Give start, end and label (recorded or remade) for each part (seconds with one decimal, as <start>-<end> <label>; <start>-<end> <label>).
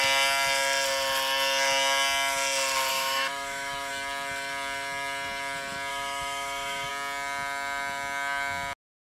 0.0-2.9 recorded; 2.9-3.9 remade; 3.9-5.9 recorded; 5.9-6.9 remade; 6.9-9.1 recorded